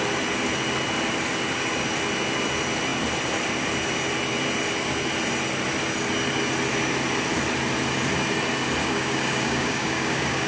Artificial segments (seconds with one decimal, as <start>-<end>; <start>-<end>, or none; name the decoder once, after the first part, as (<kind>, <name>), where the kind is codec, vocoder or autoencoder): 8.8-10.5 (codec, DAC)

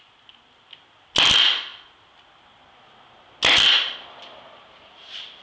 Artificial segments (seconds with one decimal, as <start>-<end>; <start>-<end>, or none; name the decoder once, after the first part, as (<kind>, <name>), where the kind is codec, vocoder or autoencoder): none

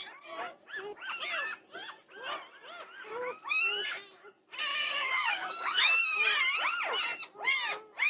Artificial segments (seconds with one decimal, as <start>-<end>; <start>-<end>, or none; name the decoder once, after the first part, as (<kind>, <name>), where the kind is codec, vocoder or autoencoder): 4.7-6.0 (codec, DAC)

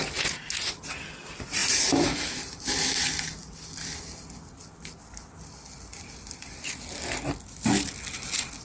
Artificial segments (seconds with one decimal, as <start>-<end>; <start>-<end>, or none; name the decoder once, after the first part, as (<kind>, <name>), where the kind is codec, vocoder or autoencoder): none

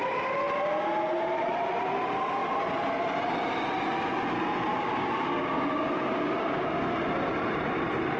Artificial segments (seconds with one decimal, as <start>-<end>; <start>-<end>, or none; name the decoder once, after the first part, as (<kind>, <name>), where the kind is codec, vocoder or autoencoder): 4.7-6.8 (codec, DAC)

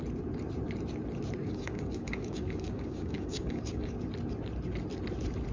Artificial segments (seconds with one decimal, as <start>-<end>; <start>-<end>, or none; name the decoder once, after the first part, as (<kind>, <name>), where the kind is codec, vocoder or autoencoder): 1.4-4.0 (codec, DAC)